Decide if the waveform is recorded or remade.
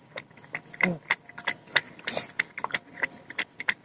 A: recorded